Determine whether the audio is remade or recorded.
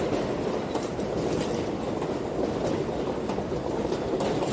recorded